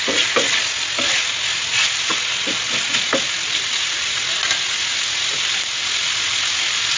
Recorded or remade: recorded